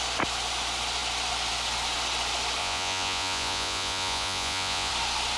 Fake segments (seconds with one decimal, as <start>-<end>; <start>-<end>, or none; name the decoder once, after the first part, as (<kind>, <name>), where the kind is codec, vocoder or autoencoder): 2.6-4.9 (vocoder, Vocos)